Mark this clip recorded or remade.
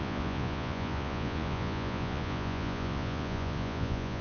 remade